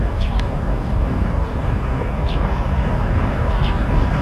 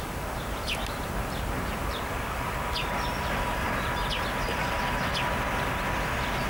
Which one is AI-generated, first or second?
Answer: first